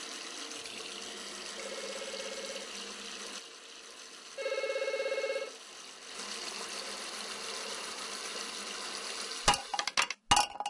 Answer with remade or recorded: recorded